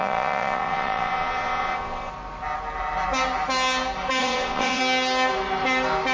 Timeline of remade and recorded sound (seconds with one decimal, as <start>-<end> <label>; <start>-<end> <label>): 0.0-2.1 remade; 2.1-4.2 recorded; 4.2-4.8 remade; 4.8-6.1 recorded